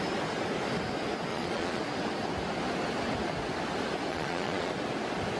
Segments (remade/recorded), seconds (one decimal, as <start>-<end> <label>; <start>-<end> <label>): 0.0-1.3 recorded; 1.3-1.8 remade; 1.8-4.1 recorded; 4.1-4.7 remade; 4.7-5.4 recorded